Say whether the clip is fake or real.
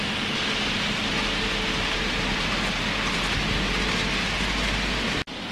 real